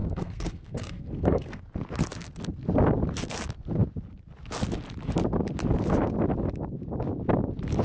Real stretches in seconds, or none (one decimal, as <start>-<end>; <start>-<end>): 1.6-7.8